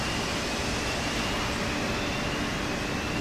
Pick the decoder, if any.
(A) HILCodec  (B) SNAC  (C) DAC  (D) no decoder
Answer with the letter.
D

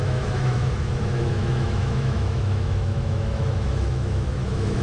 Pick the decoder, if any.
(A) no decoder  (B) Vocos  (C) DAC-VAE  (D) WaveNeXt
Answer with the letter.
C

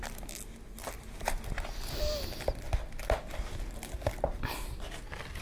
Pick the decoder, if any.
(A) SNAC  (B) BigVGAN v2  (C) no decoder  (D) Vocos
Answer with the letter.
C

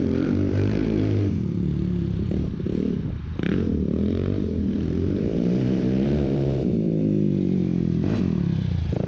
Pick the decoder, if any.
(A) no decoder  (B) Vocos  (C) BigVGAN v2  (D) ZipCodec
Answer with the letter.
C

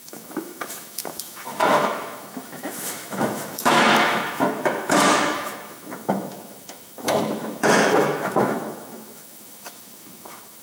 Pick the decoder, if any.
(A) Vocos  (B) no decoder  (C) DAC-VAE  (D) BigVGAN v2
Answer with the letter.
C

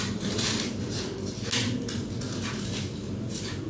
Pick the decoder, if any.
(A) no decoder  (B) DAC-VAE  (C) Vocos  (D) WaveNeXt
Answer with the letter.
A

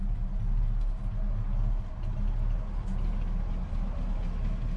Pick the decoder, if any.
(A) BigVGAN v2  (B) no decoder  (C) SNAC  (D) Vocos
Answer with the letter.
B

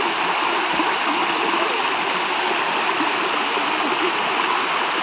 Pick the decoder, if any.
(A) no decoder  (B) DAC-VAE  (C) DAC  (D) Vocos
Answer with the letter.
A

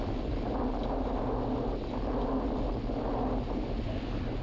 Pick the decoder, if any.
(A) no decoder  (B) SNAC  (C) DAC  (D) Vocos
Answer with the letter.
A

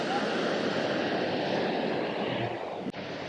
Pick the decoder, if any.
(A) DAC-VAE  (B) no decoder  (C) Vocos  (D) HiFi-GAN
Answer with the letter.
B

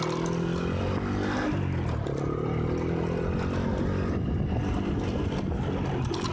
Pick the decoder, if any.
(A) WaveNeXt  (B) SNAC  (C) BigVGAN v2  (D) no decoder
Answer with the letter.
D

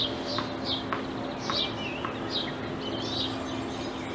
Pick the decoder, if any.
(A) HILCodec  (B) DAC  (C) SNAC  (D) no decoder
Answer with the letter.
D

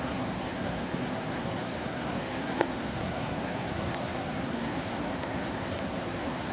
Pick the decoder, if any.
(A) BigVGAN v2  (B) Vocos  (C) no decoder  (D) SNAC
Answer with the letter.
D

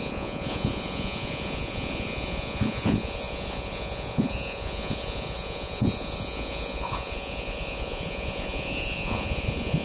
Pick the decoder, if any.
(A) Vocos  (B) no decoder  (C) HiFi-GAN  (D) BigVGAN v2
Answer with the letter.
A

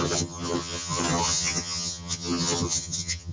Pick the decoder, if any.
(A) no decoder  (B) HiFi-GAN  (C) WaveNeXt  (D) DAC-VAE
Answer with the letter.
B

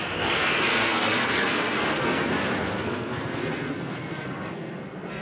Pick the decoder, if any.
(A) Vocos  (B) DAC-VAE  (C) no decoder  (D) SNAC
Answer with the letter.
D